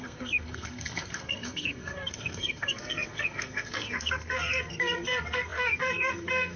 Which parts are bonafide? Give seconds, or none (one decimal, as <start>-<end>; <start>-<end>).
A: none